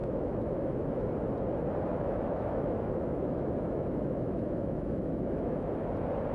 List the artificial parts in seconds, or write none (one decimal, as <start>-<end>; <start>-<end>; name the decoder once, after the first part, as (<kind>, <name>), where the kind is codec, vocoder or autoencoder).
0.0-1.1 (autoencoder, DAC-VAE); 1.9-5.7